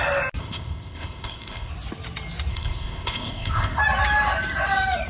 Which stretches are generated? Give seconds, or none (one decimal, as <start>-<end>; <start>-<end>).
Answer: 0.4-1.7; 2.5-3.8